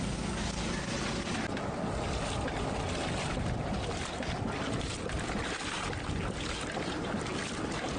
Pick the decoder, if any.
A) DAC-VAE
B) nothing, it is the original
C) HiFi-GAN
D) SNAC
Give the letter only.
B